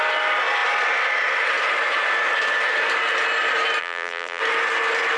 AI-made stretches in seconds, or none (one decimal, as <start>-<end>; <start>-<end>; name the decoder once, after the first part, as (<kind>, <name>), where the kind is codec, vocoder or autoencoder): 3.8-4.4 (vocoder, BigVGAN v2)